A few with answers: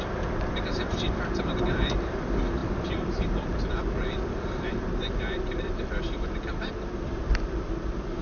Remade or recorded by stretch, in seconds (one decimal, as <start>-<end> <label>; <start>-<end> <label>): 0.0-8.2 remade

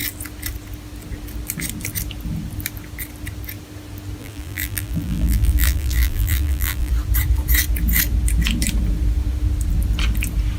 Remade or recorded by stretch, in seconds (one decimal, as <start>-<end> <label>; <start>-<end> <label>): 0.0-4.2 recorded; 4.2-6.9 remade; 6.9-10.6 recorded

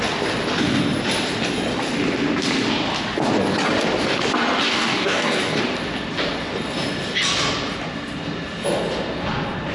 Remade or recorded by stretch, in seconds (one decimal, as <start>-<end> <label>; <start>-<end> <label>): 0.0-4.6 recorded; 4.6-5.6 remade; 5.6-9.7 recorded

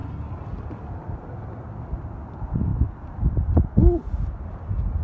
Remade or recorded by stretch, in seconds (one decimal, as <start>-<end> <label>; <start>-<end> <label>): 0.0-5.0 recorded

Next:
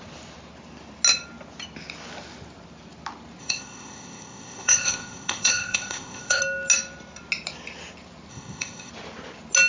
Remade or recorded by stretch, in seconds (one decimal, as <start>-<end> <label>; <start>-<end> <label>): 0.0-3.4 recorded; 3.4-6.4 remade; 6.4-8.3 recorded; 8.3-8.9 remade; 8.9-9.7 recorded

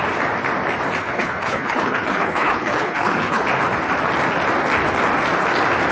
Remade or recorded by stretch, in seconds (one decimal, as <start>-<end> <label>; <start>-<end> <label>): 0.0-1.0 recorded; 1.0-3.4 remade; 3.4-5.9 recorded

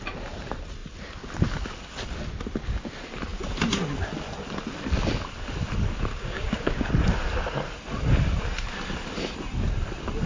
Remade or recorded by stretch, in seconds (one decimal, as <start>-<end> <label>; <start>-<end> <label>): 0.0-6.1 recorded; 6.1-6.9 remade; 6.9-10.3 recorded